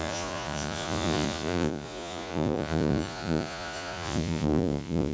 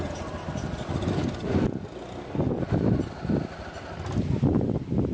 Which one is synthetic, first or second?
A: first